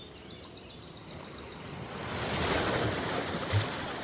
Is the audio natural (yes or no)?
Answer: no